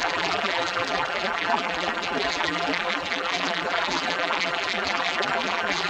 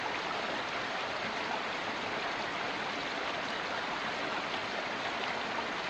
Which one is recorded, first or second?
second